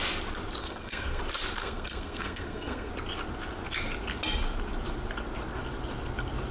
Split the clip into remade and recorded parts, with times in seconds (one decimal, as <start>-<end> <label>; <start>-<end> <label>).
0.0-0.6 recorded; 0.6-1.2 remade; 1.2-1.6 recorded; 1.6-2.9 remade; 2.9-6.5 recorded